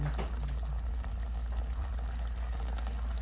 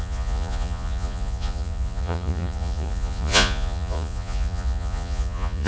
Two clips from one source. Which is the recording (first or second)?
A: first